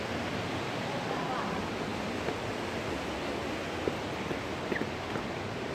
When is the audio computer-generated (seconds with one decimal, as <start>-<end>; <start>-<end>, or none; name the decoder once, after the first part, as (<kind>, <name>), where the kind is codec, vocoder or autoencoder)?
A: none